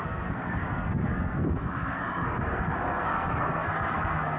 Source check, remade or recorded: remade